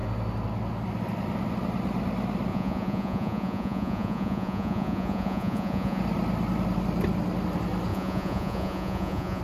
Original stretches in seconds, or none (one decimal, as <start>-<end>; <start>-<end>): 0.0-2.5; 6.0-7.9